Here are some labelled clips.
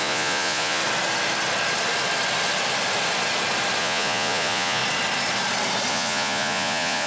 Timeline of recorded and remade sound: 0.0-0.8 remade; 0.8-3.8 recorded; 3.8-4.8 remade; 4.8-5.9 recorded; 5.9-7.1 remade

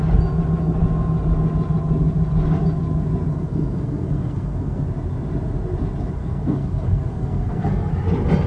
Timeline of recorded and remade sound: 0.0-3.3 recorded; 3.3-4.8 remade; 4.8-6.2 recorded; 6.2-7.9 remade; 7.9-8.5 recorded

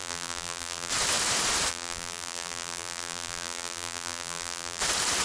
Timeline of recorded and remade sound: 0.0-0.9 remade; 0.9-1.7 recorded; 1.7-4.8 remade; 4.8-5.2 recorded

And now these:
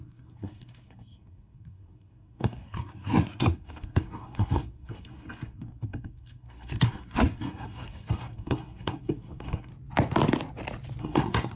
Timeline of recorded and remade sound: 0.0-9.7 remade; 9.7-11.0 recorded; 11.0-11.6 remade